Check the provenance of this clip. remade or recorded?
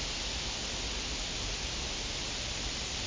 recorded